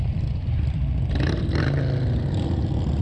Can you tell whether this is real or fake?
fake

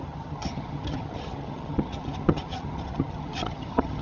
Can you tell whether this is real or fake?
fake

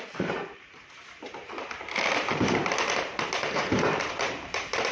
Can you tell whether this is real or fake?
fake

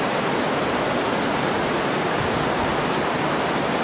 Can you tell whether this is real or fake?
real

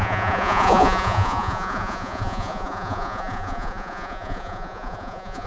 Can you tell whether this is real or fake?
fake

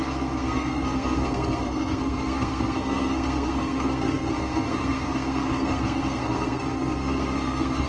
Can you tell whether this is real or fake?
fake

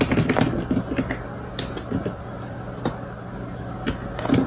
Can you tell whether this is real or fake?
real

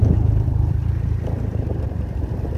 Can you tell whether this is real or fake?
fake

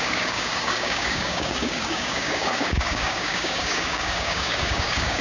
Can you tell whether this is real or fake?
fake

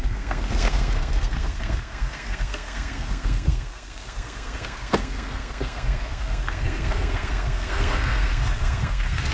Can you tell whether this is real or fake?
fake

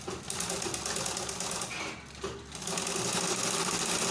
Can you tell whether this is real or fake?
real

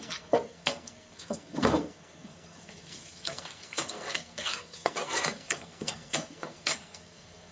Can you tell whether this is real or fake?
fake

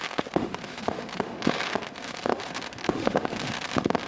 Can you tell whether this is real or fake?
fake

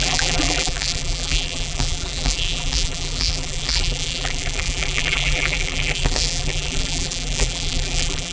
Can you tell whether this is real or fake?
fake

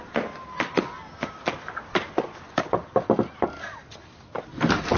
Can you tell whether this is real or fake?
real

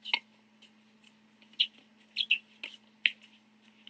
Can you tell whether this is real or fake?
real